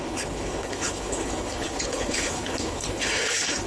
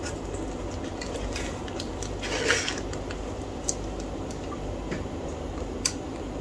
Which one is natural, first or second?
second